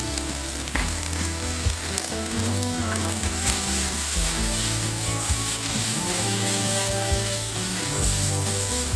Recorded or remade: remade